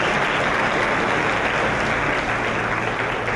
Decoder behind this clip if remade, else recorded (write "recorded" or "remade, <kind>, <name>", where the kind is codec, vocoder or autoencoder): recorded